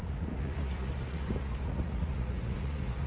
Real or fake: fake